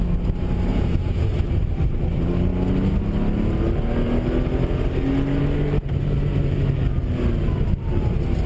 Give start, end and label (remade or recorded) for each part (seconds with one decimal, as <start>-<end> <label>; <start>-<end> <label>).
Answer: 0.0-0.7 recorded; 0.7-1.3 remade; 1.3-8.5 recorded